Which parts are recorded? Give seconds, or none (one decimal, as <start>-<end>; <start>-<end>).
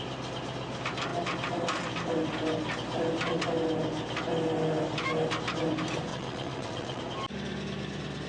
0.0-6.1; 7.0-8.3